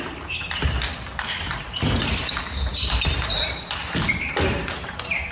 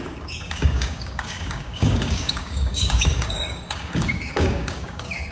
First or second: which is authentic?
first